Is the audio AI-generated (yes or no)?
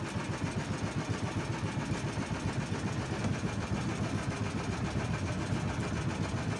no